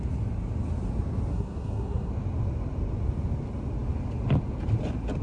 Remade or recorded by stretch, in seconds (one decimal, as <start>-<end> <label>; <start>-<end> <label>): 0.0-1.3 recorded; 1.3-2.1 remade; 2.1-5.2 recorded